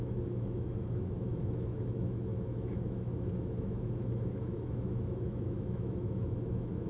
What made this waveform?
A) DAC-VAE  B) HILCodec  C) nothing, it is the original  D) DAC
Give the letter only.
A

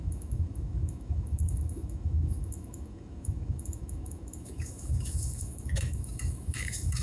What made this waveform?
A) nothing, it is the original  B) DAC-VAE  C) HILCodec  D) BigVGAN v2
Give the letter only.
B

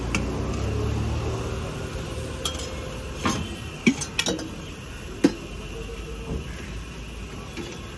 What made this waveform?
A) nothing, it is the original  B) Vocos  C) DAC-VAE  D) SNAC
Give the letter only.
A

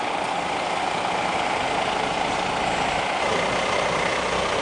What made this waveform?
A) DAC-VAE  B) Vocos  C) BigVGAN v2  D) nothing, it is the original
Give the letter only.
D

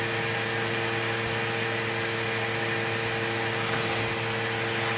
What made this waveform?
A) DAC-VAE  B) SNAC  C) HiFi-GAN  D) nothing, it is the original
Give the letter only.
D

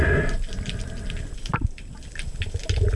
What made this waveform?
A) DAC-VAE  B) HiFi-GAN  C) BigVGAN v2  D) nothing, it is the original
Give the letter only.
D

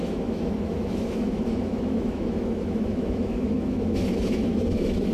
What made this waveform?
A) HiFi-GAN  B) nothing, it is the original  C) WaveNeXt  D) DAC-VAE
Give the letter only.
D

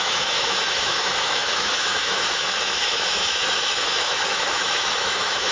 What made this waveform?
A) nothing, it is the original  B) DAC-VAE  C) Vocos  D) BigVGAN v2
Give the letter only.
B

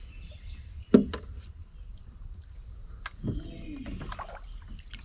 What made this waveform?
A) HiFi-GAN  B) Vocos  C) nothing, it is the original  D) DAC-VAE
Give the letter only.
C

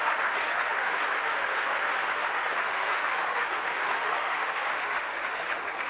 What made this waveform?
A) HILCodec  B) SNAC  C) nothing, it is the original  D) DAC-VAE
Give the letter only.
D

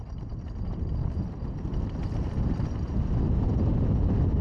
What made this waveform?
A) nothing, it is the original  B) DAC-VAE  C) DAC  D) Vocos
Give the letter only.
A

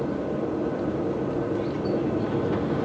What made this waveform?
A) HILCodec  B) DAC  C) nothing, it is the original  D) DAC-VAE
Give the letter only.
C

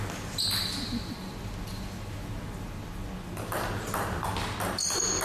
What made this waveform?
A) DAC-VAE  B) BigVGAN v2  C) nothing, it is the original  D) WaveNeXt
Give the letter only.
C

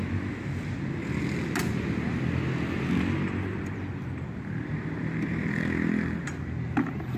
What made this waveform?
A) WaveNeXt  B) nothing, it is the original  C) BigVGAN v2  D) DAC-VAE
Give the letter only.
B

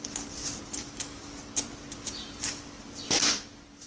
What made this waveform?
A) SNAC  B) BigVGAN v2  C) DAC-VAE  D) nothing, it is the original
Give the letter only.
D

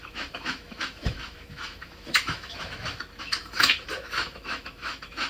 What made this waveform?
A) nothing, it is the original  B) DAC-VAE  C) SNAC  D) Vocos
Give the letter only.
B